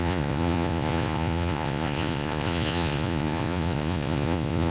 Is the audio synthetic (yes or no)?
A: yes